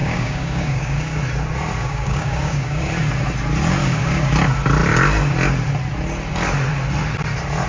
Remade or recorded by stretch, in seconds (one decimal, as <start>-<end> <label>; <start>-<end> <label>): 0.0-1.2 remade; 1.2-1.8 recorded; 1.8-2.9 remade; 2.9-3.8 recorded; 3.8-4.3 remade; 4.3-7.7 recorded